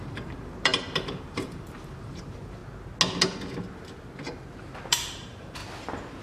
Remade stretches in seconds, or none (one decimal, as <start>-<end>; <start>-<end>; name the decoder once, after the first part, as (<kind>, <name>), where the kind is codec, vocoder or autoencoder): 0.0-2.6 (vocoder, BigVGAN v2); 4.9-5.6